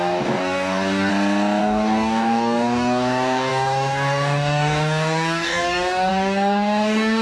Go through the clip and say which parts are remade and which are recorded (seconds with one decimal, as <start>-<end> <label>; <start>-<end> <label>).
0.0-1.1 remade; 1.1-1.6 recorded; 1.6-7.2 remade